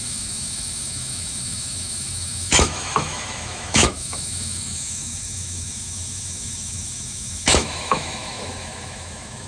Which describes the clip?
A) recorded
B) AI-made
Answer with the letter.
B